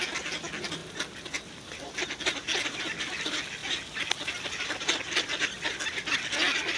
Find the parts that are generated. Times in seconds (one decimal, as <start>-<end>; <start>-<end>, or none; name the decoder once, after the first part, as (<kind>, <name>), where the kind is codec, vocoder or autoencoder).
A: none